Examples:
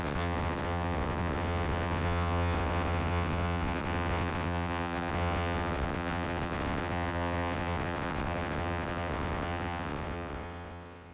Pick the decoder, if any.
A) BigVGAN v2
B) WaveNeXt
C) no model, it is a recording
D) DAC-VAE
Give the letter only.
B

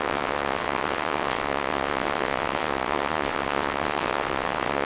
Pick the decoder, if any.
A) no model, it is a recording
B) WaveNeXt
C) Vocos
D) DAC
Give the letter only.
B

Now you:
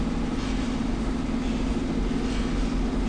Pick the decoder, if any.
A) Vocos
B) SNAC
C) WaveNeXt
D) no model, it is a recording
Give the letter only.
D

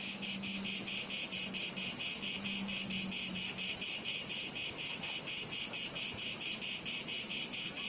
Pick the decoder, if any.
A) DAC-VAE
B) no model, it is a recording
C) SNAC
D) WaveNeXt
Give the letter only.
B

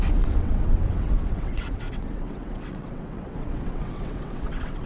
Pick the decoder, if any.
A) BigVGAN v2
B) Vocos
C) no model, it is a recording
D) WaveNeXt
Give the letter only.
D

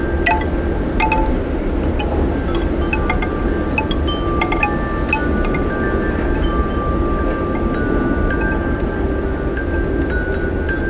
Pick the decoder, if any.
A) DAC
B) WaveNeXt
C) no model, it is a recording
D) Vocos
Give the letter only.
C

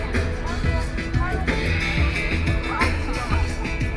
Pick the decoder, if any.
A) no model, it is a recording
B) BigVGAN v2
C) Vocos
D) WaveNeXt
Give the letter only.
A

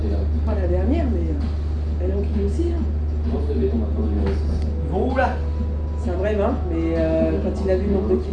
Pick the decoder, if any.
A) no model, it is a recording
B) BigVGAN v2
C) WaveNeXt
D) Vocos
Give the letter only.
A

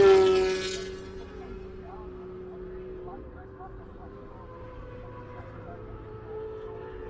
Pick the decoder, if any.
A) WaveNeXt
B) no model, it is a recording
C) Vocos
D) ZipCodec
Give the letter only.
B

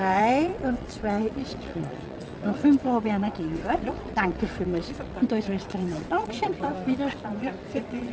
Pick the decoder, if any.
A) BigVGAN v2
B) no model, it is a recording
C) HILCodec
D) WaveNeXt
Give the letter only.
D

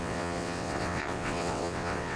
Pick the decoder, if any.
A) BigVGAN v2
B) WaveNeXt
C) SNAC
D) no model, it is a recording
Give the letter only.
B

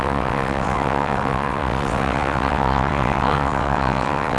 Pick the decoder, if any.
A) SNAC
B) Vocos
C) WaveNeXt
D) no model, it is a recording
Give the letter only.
C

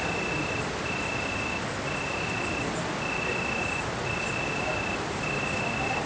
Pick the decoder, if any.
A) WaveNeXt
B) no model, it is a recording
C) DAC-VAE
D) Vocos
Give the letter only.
B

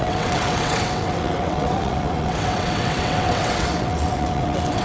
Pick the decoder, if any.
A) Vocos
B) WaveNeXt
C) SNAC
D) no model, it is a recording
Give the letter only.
B